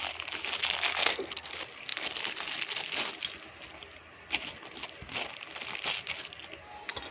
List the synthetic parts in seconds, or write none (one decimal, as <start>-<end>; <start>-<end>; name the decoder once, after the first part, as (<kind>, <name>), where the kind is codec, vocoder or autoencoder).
1.0-1.5 (codec, SNAC)